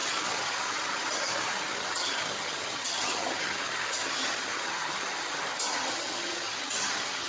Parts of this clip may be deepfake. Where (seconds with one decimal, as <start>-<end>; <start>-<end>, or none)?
0.0-7.3

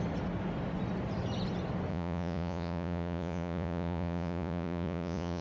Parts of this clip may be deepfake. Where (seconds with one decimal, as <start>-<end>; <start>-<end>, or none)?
1.9-5.4

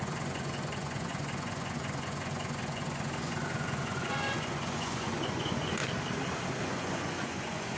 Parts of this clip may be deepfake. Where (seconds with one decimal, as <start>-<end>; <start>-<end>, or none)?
0.0-5.8; 6.6-7.8